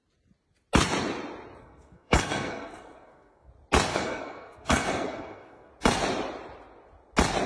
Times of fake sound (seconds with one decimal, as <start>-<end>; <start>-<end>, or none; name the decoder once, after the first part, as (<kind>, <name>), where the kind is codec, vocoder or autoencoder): 1.6-3.5 (codec, SNAC); 3.9-5.7